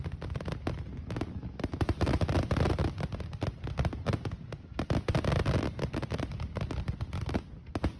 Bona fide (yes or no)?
yes